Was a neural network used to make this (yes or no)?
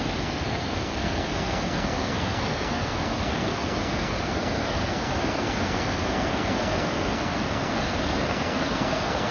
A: yes